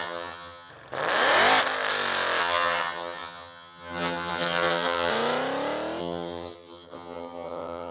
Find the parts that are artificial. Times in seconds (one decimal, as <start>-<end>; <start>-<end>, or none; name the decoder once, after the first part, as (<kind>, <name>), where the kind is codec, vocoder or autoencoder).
0.0-0.7 (vocoder, HiFi-GAN); 2.4-5.1; 6.0-7.9